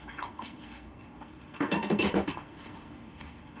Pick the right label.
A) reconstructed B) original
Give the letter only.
A